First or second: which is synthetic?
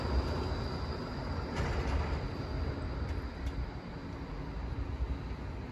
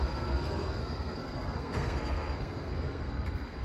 second